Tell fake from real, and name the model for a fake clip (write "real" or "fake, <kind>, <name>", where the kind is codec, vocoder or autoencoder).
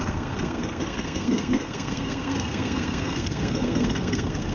fake, codec, SNAC